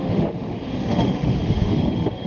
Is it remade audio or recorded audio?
remade